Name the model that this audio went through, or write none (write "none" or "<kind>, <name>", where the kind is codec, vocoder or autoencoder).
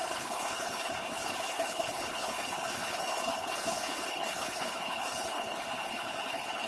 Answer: codec, HILCodec